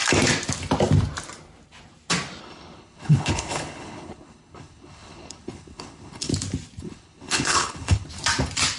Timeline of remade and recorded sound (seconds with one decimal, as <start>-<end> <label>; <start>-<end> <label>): 0.0-2.4 recorded; 2.4-6.3 remade; 6.3-6.8 recorded; 6.8-8.1 remade; 8.1-8.8 recorded